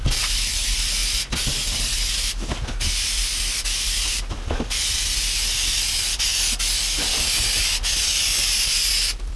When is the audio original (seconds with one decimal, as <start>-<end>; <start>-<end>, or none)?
1.0-4.0; 6.3-7.8